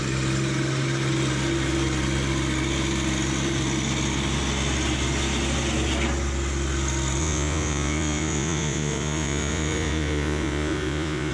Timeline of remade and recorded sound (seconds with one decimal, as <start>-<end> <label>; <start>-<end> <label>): 0.0-7.2 recorded; 7.2-11.3 remade